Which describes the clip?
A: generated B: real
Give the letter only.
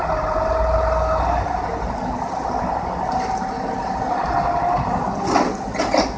B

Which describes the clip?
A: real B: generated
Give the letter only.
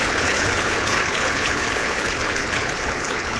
B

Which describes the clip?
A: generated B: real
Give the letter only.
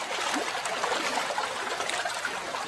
B